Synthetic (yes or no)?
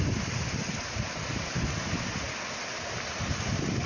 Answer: no